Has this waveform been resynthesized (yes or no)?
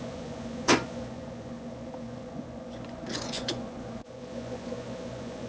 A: yes